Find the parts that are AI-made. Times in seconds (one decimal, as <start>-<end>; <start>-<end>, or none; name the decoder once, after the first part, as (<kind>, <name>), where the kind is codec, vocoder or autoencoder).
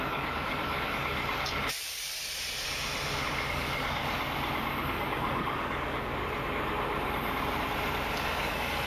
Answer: 0.0-2.1 (codec, DAC); 3.2-4.0; 4.8-6.2; 8.1-8.9